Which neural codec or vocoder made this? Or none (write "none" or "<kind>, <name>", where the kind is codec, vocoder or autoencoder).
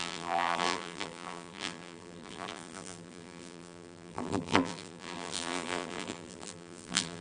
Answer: vocoder, BigVGAN v2